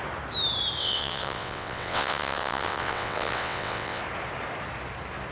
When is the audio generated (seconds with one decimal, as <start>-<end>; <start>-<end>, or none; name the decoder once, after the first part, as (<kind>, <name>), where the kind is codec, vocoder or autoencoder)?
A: 0.8-4.0 (vocoder, WaveNeXt)